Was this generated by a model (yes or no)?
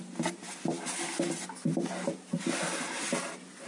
no